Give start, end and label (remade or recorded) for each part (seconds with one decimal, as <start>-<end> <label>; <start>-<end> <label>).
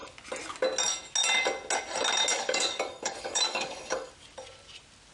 0.0-2.3 recorded; 2.3-4.1 remade; 4.1-5.1 recorded